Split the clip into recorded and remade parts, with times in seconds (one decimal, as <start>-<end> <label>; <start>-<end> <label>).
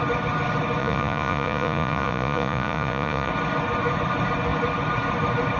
0.0-0.8 recorded; 0.8-3.3 remade; 3.3-5.6 recorded